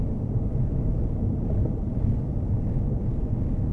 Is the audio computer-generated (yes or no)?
yes